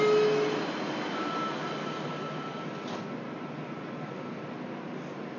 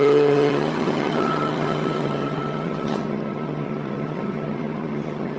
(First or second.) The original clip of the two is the first